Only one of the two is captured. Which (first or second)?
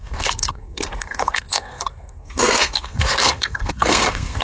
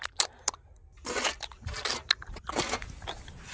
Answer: second